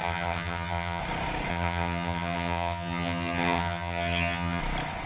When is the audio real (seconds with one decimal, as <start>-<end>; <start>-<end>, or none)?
1.0-1.5; 4.6-5.1